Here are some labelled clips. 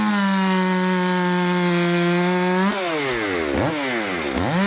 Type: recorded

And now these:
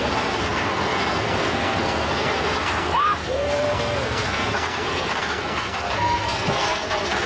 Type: remade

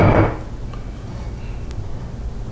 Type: recorded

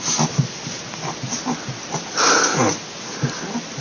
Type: recorded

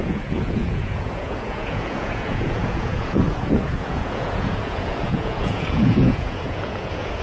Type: remade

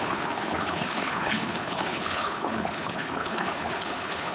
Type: remade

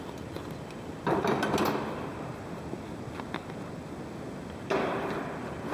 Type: recorded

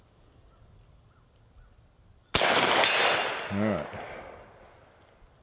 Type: recorded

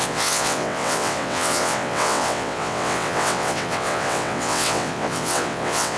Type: remade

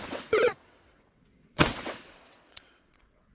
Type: remade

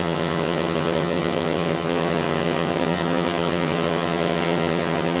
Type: remade